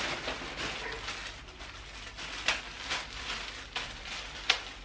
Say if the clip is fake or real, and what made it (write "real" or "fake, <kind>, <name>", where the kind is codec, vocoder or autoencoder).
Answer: real